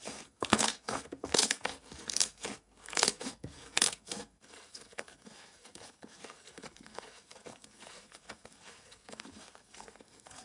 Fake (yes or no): yes